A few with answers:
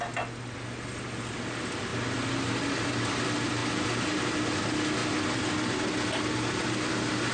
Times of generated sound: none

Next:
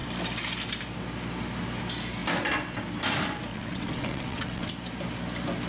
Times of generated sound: 3.5-4.7 (vocoder, WaveNeXt)

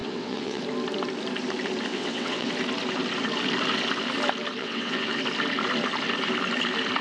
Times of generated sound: 0.0-0.6 (vocoder, WaveNeXt); 1.9-2.5; 4.6-5.2

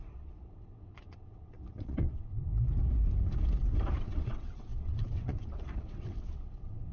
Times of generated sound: 0.0-2.5 (vocoder, WaveNeXt); 4.0-6.9

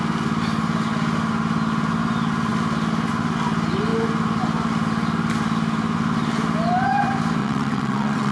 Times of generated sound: 7.4-8.3 (vocoder, WaveNeXt)

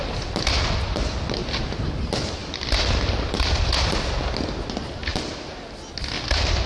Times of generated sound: none